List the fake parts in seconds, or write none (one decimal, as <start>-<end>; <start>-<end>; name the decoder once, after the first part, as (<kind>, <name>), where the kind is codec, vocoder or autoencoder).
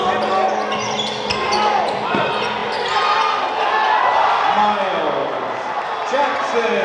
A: 5.2-5.7 (vocoder, BigVGAN v2)